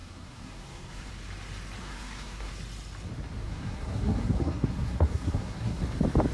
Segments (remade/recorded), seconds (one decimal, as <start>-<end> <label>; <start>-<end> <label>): 0.0-1.1 remade; 1.1-1.8 recorded; 1.8-2.5 remade; 2.5-3.4 recorded; 3.4-5.8 remade; 5.8-6.3 recorded